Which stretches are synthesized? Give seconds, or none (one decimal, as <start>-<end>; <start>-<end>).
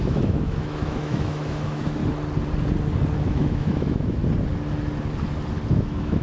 0.0-2.0; 3.2-4.2; 5.7-6.2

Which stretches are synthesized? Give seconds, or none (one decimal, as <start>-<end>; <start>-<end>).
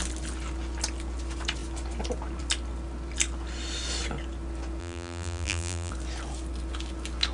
4.8-5.9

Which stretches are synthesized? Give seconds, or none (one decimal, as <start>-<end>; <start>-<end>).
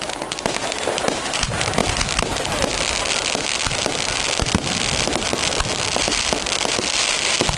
none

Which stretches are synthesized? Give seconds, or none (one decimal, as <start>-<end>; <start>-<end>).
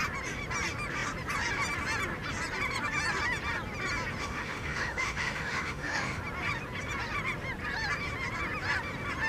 4.2-6.2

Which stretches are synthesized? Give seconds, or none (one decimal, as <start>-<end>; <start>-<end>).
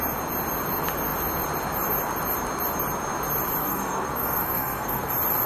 3.6-5.1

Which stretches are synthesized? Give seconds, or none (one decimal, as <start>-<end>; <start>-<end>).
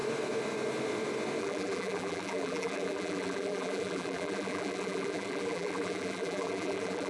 1.4-7.1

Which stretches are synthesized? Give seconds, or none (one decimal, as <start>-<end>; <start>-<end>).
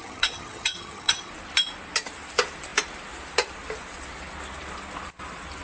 0.0-1.3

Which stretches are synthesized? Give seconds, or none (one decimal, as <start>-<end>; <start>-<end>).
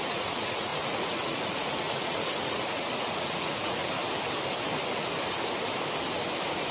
0.0-3.8